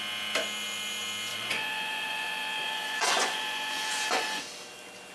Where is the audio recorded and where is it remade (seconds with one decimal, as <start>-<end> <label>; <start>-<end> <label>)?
0.0-1.3 recorded; 1.3-4.4 remade; 4.4-5.1 recorded